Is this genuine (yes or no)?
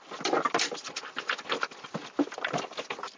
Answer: yes